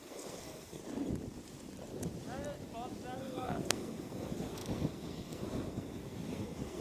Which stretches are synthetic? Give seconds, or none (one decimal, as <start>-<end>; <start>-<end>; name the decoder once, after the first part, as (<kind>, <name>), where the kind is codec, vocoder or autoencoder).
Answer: 0.0-0.8 (codec, SNAC); 3.2-6.8